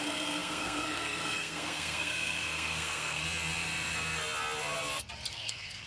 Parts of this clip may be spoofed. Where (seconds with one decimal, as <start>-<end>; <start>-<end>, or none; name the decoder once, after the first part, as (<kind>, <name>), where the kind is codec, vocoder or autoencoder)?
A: 0.0-3.2 (codec, SNAC); 5.3-5.9